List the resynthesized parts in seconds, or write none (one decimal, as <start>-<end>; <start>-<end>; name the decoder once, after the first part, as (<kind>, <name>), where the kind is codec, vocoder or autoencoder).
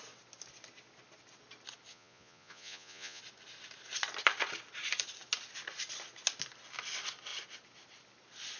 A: 1.9-3.2 (vocoder, Vocos)